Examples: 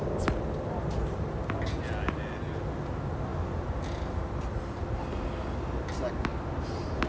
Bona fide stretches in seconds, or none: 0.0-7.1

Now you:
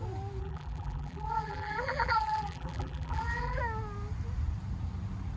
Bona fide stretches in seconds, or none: 0.0-0.4; 3.6-5.4

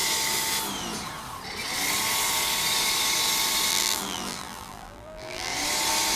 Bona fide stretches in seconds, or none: 0.0-3.7; 5.5-6.2

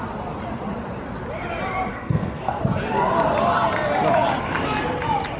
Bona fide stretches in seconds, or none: 0.0-1.9; 2.6-5.4